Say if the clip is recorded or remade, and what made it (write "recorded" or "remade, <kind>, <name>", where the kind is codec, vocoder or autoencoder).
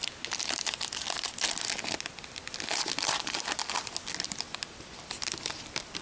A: recorded